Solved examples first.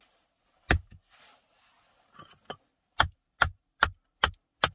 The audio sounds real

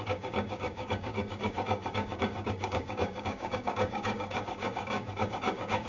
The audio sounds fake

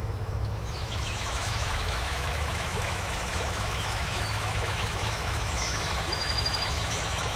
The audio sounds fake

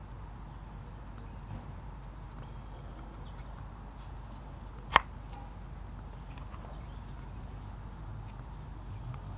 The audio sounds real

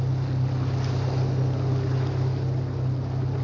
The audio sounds real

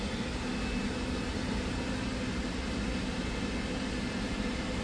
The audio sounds real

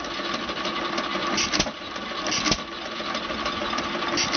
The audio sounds real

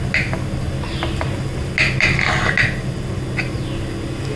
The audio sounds real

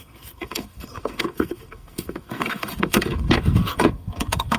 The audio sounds fake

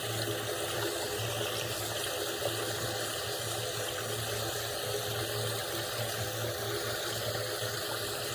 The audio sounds real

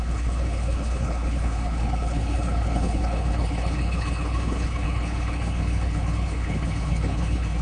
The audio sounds fake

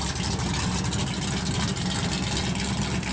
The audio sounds real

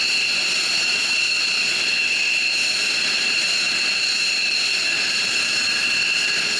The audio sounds real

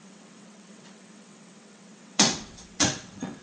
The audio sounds fake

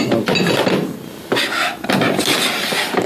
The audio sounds real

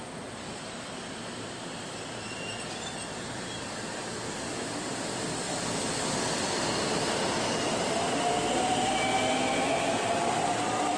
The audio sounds fake